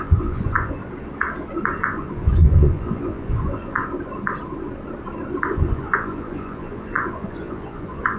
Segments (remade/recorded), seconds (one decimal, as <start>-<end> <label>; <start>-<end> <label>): 0.0-0.8 remade; 0.8-1.8 recorded; 1.8-3.8 remade; 3.8-5.5 recorded; 5.5-8.2 remade